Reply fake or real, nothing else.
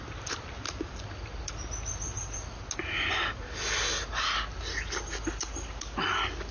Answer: real